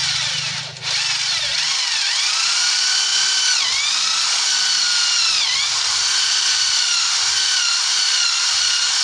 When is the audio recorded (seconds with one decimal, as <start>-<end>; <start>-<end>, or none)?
0.6-9.0